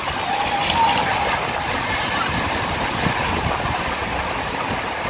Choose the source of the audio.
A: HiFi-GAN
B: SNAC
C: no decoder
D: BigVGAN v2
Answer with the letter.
C